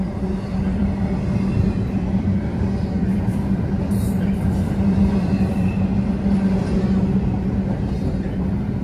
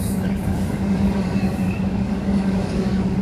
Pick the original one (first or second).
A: first